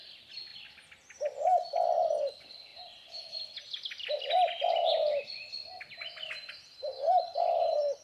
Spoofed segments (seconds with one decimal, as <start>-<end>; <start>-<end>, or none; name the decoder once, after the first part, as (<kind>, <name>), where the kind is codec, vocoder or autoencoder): none